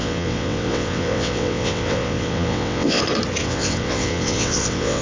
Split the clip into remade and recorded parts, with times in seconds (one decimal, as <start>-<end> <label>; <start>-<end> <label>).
0.0-3.0 remade; 3.0-3.4 recorded; 3.4-5.0 remade